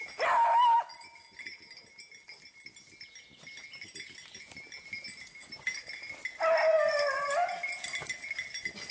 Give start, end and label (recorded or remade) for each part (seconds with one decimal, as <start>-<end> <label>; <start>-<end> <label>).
0.0-5.4 recorded; 5.4-8.9 remade